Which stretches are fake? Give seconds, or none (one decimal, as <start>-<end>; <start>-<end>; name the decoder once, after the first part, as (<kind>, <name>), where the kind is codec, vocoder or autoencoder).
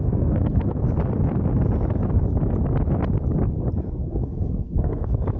0.0-0.8 (codec, SNAC); 4.0-5.4